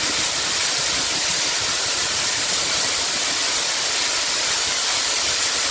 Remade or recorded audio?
recorded